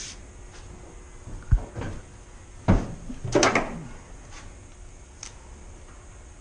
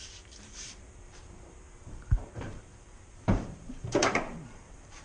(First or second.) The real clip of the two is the first